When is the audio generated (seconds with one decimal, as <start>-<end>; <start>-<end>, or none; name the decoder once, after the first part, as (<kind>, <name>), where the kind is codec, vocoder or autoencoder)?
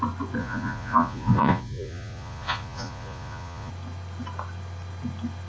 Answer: 0.4-3.7 (vocoder, Vocos)